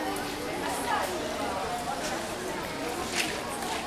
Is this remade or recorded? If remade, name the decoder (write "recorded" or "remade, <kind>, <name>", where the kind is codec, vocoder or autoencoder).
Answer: recorded